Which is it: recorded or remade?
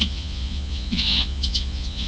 remade